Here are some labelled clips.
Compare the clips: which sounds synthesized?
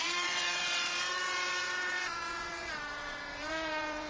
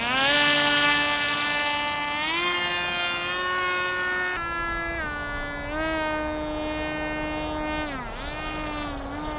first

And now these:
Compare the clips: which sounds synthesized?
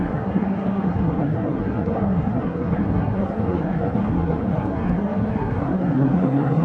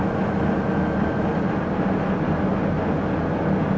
first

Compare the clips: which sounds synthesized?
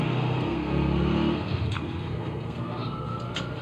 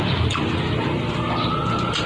first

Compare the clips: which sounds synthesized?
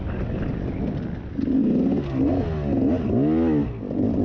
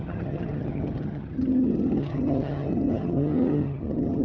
second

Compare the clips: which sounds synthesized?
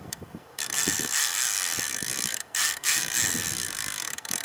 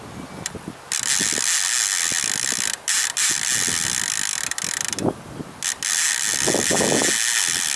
first